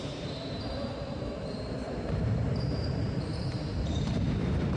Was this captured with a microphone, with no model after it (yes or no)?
no